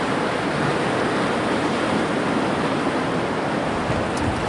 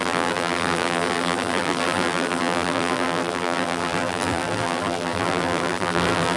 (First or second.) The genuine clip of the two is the first